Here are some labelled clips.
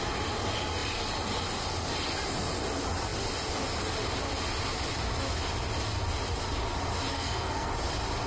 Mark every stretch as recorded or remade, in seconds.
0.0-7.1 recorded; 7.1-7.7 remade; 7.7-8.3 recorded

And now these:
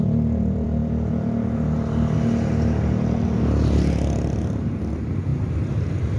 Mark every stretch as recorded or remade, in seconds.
0.0-0.8 remade; 0.8-4.5 recorded; 4.5-5.3 remade; 5.3-6.2 recorded

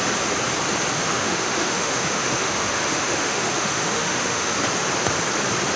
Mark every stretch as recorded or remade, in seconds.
0.0-1.0 recorded; 1.0-4.5 remade; 4.5-5.8 recorded